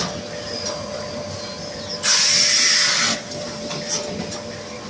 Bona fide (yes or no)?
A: yes